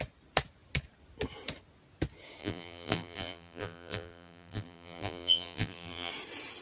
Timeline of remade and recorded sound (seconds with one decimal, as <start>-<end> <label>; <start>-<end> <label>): 0.0-2.4 recorded; 2.4-6.1 remade; 6.1-6.6 recorded